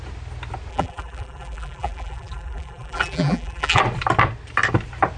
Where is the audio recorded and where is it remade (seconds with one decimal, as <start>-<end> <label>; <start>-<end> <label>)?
0.0-0.7 recorded; 0.7-3.8 remade; 3.8-5.2 recorded